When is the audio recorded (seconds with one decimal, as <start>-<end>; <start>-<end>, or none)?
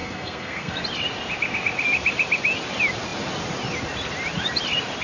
0.8-5.0